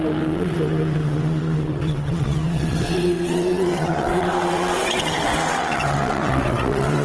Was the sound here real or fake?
fake